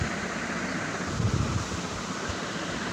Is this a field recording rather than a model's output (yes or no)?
yes